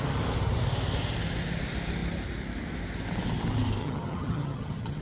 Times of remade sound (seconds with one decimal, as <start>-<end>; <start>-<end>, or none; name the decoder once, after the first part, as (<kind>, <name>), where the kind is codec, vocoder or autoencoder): 3.8-5.0 (vocoder, HiFi-GAN)